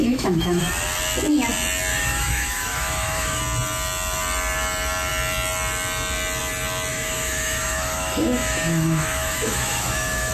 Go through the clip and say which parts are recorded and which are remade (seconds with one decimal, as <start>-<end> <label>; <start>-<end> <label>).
0.0-0.6 remade; 0.6-1.9 recorded; 1.9-3.4 remade; 3.4-6.9 recorded; 6.9-10.3 remade